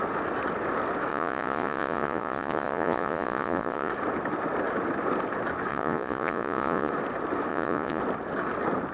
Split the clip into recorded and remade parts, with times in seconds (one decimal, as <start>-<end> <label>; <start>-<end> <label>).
0.0-1.1 recorded; 1.1-3.9 remade; 3.9-5.7 recorded; 5.7-6.9 remade; 6.9-7.5 recorded; 7.5-8.0 remade; 8.0-8.9 recorded